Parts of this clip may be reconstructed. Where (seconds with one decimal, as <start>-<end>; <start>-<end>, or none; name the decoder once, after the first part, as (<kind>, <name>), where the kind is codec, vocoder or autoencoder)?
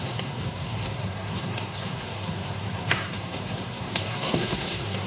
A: 0.0-5.1 (codec, SNAC)